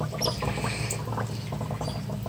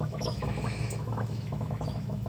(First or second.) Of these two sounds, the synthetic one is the second